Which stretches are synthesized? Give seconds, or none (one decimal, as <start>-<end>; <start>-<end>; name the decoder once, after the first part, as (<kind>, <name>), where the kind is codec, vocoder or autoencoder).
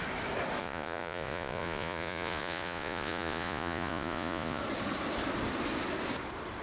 0.6-4.6 (vocoder, Vocos)